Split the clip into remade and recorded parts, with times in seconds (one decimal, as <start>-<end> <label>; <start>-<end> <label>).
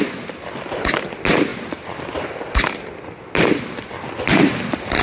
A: 0.0-5.0 recorded